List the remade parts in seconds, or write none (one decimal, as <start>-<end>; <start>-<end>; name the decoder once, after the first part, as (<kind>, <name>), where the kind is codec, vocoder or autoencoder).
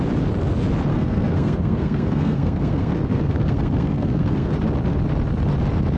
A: 0.9-4.5 (codec, SNAC)